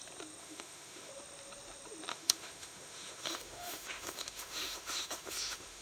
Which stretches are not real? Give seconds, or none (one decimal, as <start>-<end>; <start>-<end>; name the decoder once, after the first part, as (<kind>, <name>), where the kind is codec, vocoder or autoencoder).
0.4-1.1 (autoencoder, DAC-VAE); 2.1-5.8